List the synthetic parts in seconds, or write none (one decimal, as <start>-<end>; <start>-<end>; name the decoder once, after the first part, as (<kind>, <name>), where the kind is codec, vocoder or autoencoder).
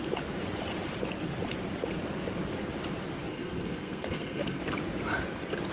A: 3.3-4.6 (codec, SNAC)